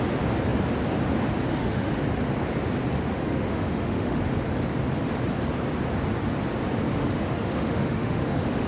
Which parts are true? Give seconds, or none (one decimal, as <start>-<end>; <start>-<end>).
0.0-1.5; 2.0-3.1; 4.2-7.0